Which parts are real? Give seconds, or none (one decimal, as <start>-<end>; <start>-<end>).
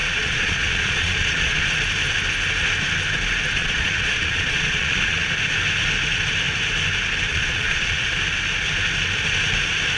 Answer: 1.6-3.6; 5.2-7.3; 8.1-10.0